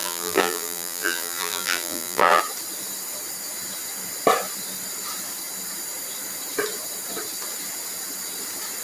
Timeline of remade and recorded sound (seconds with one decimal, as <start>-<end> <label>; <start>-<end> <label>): 0.0-2.4 remade; 2.4-8.8 recorded